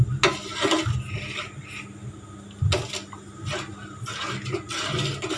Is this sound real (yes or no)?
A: yes